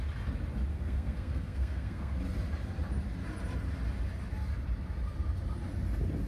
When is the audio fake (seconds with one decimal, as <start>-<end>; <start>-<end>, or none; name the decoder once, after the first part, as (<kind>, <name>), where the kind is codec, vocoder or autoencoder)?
0.7-2.2 (codec, SNAC)